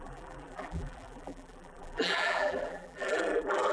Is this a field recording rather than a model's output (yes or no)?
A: no